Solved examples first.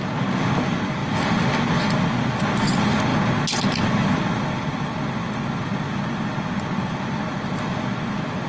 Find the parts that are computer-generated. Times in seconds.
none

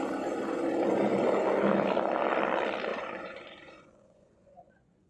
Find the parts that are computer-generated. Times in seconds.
2.9-5.1

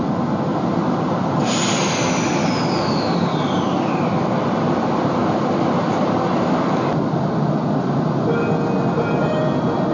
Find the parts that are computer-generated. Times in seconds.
none

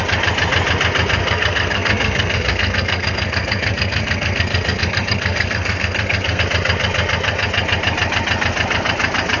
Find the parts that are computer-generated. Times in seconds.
1.2-6.4

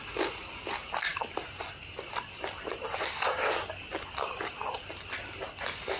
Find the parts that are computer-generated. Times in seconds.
none

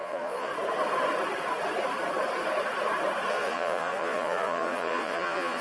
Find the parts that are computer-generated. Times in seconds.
0.0-0.5; 3.3-5.6

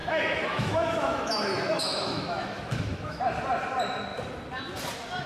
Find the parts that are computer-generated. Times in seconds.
0.0-3.2

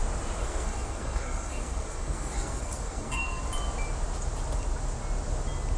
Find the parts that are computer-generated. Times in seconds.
0.4-3.4